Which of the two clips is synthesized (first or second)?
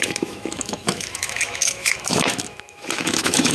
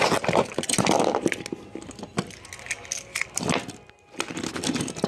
first